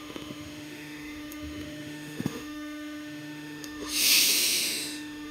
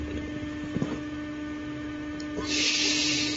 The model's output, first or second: first